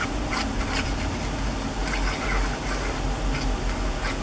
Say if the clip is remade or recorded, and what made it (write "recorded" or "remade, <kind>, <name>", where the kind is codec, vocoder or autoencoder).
recorded